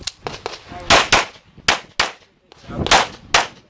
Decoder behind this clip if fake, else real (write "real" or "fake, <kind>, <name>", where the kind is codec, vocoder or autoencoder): real